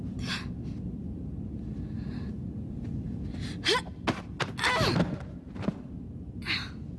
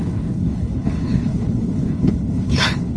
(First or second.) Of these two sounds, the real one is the first